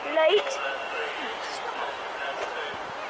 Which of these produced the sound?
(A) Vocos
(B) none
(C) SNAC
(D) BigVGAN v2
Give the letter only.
B